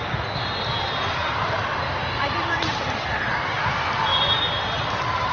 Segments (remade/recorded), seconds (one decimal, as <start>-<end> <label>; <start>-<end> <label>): 0.0-5.3 remade